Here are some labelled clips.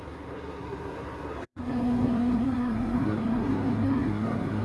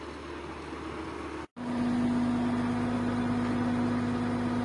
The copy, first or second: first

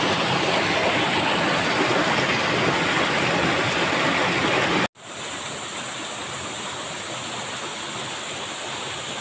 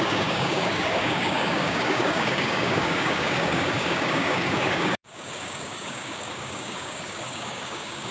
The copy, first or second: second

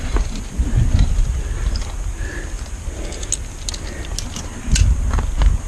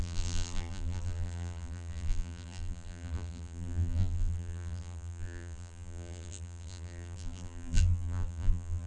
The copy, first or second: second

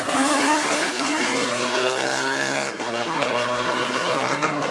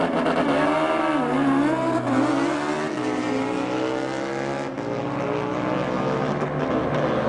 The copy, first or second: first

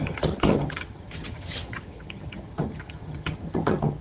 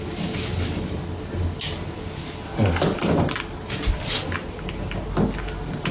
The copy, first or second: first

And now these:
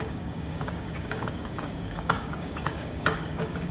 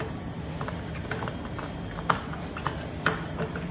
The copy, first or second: first